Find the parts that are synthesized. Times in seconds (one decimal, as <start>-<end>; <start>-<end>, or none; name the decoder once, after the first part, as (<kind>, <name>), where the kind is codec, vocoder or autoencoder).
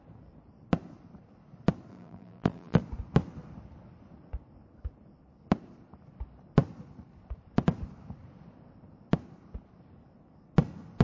1.9-2.8 (vocoder, BigVGAN v2)